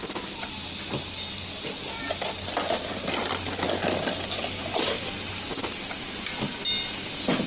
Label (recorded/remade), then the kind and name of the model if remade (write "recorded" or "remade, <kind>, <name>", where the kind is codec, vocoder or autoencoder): recorded